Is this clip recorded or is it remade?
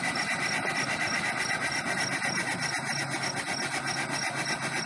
recorded